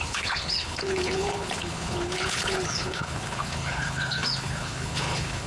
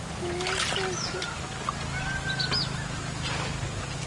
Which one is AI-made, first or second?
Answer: first